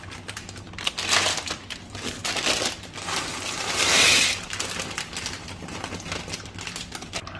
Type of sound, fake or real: real